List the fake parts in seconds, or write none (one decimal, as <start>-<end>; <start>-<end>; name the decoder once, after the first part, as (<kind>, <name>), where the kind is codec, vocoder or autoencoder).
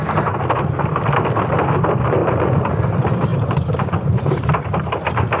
2.2-2.8 (vocoder, BigVGAN v2); 3.3-4.5